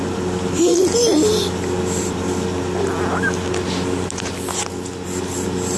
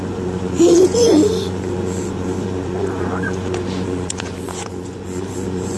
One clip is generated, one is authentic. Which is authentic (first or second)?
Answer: first